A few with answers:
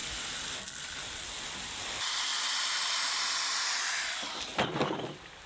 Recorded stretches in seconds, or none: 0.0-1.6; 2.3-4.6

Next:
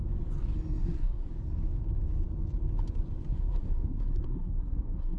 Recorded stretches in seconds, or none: 0.0-0.8; 1.3-3.3

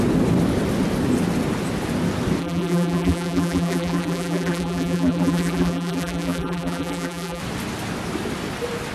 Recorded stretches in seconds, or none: 0.0-2.4; 7.4-8.9

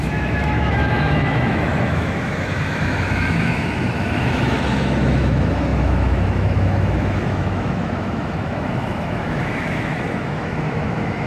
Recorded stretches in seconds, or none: none

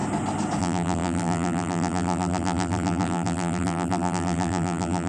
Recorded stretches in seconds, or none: 0.0-0.6

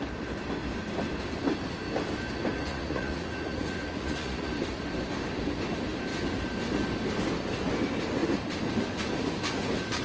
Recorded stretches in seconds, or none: 0.0-2.7; 4.5-10.0